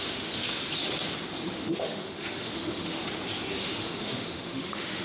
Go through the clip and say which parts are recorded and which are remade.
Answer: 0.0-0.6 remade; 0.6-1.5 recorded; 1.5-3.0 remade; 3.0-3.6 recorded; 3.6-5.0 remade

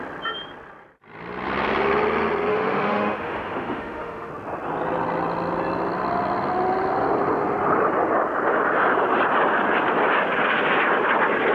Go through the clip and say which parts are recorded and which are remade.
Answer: 0.0-2.5 recorded; 2.5-4.3 remade; 4.3-11.5 recorded